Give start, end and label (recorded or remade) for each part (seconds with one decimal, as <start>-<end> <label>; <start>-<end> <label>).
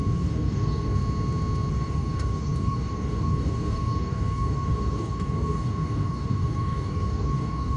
0.0-1.0 remade; 1.0-1.7 recorded; 1.7-7.8 remade